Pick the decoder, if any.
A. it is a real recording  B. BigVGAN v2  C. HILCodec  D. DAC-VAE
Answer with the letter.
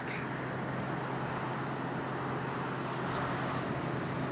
A